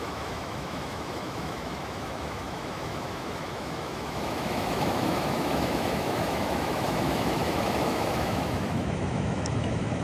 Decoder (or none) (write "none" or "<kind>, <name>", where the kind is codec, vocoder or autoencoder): autoencoder, DAC-VAE